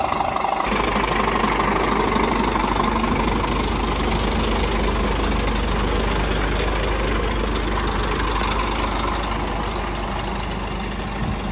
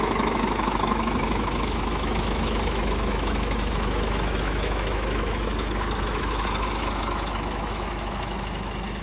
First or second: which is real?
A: first